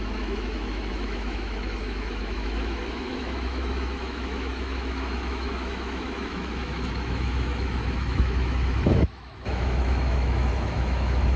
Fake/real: fake